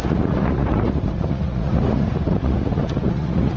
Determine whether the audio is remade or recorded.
remade